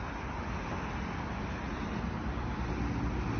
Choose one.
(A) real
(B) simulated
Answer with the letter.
A